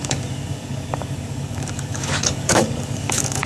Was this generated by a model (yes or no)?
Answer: yes